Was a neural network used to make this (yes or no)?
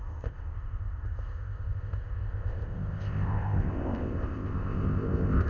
yes